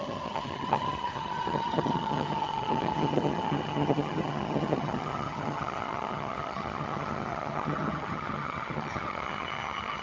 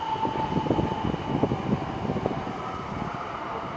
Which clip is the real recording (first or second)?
second